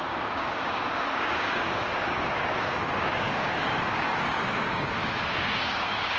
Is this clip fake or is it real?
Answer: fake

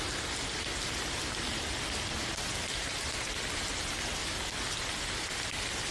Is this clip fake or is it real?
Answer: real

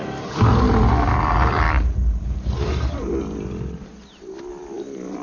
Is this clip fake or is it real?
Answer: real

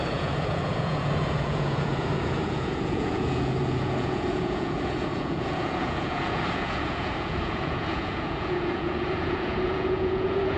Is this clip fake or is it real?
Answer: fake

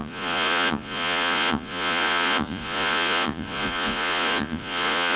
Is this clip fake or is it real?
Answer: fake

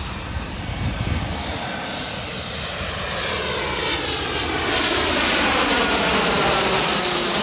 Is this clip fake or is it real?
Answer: real